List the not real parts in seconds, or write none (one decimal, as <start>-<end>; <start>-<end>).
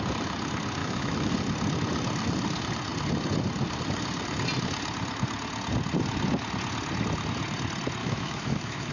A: 0.8-1.3; 8.0-8.9